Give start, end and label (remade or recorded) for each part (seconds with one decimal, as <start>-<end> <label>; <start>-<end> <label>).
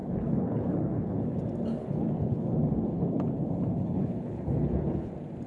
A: 0.0-1.4 remade; 1.4-1.8 recorded; 1.8-5.1 remade; 5.1-5.5 recorded